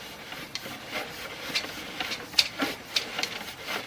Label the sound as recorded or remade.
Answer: recorded